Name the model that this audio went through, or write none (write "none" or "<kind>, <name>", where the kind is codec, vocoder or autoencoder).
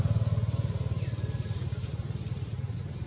none